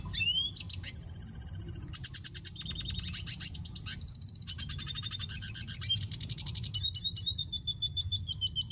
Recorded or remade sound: recorded